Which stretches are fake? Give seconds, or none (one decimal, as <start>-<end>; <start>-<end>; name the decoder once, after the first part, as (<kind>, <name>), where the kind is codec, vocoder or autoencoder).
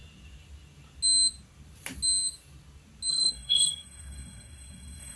3.1-5.2 (codec, SNAC)